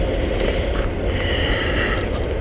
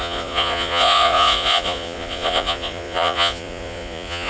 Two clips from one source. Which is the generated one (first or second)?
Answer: second